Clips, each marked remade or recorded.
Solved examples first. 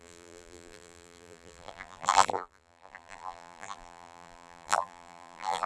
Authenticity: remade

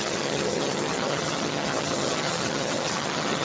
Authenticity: remade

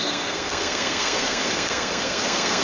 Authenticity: remade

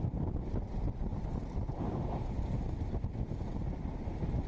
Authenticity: recorded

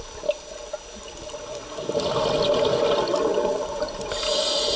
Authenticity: recorded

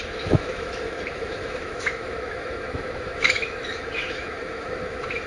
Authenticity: remade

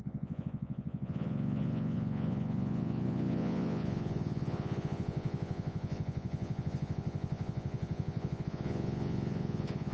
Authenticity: remade